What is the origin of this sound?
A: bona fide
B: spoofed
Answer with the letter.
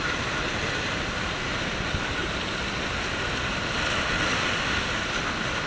A